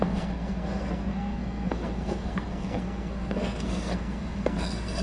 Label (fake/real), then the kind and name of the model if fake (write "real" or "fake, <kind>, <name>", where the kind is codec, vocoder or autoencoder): fake, codec, SNAC